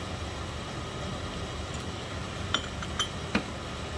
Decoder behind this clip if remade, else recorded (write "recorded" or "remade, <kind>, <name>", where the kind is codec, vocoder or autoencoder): recorded